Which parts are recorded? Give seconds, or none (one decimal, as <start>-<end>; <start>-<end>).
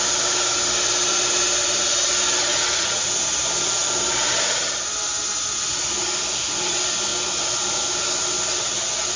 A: 0.0-2.5; 3.1-9.2